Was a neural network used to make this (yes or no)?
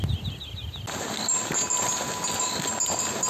no